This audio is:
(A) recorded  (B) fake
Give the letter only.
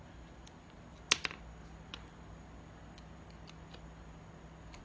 A